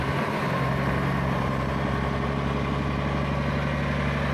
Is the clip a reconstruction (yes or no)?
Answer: no